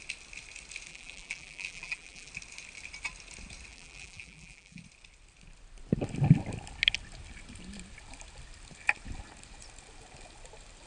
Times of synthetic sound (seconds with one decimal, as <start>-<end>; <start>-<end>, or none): 0.9-2.3; 3.7-4.8